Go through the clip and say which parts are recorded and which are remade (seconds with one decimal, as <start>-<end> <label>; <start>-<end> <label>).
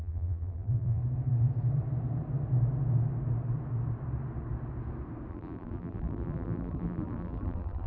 0.0-1.0 remade; 1.0-5.3 recorded; 5.3-7.9 remade